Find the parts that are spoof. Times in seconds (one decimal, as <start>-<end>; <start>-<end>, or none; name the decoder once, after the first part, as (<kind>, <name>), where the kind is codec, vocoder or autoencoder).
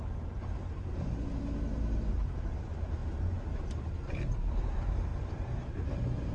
0.0-6.3 (vocoder, BigVGAN v2)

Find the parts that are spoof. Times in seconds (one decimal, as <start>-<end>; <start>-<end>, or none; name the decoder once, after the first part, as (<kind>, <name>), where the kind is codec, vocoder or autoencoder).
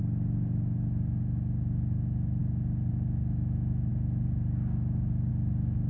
none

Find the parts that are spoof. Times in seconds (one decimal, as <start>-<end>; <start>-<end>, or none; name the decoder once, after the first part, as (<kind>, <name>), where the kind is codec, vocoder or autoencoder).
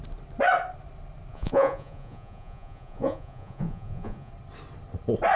1.3-4.3 (vocoder, Vocos)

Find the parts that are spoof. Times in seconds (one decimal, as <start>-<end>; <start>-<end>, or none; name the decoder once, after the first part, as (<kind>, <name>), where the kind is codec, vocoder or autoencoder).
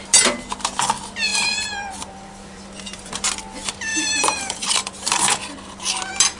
1.3-3.2 (vocoder, BigVGAN v2); 3.9-5.8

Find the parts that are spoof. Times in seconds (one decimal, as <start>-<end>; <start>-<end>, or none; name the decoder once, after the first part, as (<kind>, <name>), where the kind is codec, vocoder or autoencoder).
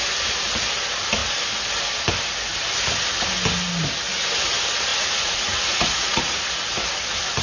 4.9-6.5 (vocoder, Vocos)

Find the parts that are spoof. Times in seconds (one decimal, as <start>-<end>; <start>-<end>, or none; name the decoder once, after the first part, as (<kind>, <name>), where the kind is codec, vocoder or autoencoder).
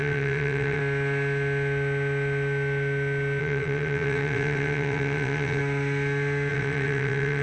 0.0-0.8 (vocoder, WaveNeXt); 3.4-5.6; 6.5-7.4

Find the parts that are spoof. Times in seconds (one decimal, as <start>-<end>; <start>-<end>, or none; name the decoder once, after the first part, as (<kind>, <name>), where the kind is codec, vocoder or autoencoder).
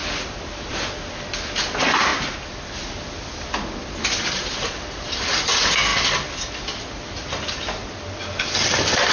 none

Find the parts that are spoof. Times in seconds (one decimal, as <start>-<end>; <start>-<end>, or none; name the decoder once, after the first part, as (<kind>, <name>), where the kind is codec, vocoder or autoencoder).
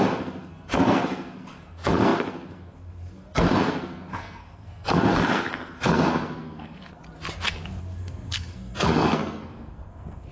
0.0-7.0 (codec, SNAC); 7.8-10.3